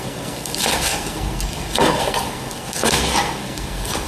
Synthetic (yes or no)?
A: yes